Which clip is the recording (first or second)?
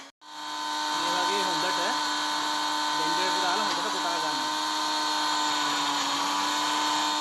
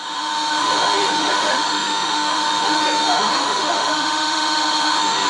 first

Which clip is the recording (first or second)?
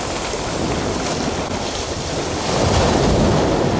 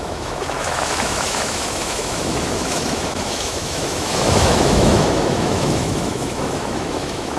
first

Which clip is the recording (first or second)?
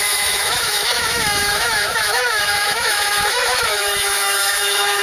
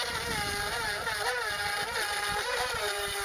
second